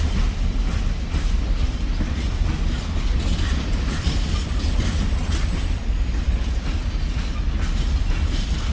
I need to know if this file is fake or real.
real